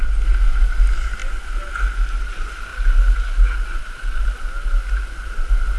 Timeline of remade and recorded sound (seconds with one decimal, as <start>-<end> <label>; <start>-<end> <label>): 0.0-5.8 recorded